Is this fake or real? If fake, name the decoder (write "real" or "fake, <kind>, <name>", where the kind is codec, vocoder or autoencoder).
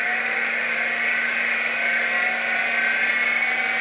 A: real